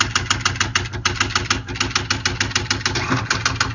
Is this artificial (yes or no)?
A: no